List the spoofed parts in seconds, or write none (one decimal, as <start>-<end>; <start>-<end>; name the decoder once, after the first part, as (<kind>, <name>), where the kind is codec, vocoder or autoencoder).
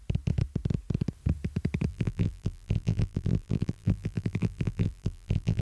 1.9-5.6 (vocoder, BigVGAN v2)